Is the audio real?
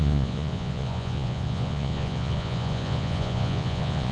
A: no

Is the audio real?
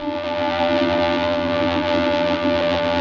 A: no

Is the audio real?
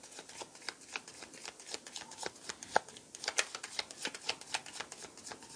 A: yes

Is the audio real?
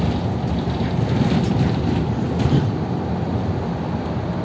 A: yes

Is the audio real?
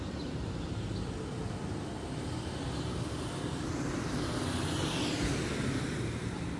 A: yes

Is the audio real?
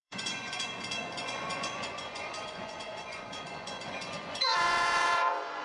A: no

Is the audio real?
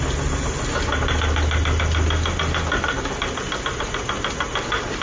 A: yes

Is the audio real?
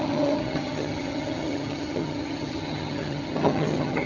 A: no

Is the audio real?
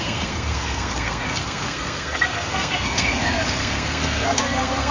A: no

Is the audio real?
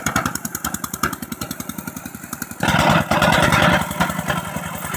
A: yes